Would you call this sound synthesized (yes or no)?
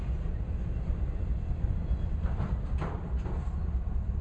no